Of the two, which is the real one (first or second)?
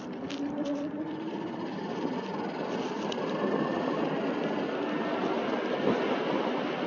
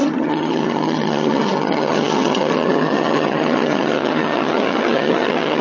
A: first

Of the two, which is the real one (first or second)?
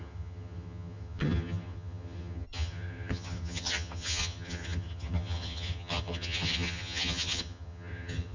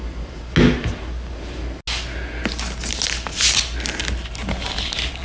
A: second